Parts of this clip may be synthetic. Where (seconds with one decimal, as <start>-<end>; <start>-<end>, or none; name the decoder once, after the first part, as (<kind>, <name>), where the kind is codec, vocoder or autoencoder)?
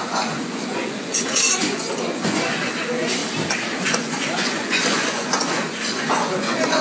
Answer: 0.0-3.2 (vocoder, Vocos); 3.8-6.8